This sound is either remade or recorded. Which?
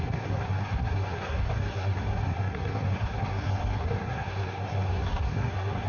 remade